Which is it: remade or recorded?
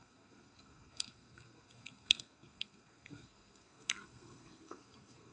remade